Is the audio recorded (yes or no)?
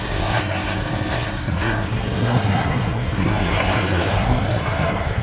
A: no